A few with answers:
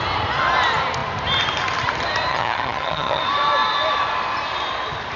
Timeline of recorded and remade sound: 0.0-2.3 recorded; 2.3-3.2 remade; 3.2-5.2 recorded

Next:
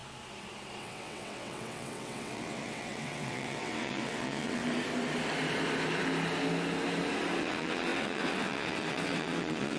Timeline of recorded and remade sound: 0.0-0.8 recorded; 0.8-4.6 remade; 4.6-7.4 recorded; 7.4-9.8 remade

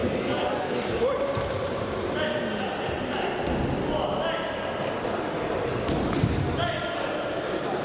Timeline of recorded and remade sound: 0.0-7.8 recorded

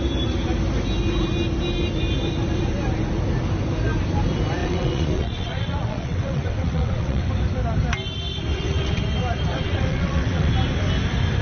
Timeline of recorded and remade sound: 0.0-4.6 recorded; 4.6-7.3 remade; 7.3-8.5 recorded; 8.5-9.0 remade; 9.0-9.5 recorded; 9.5-10.5 remade; 10.5-11.4 recorded

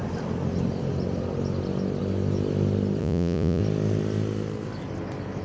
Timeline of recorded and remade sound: 0.0-3.0 recorded; 3.0-3.6 remade; 3.6-5.4 recorded

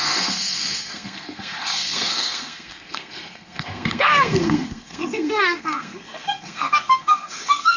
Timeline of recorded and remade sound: 0.0-7.8 remade

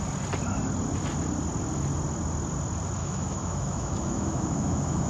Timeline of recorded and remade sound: 0.0-3.0 recorded; 3.0-5.1 remade

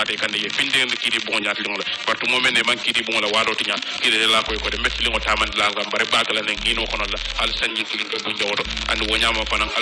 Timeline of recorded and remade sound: 0.0-7.7 recorded; 7.7-8.4 remade; 8.4-9.8 recorded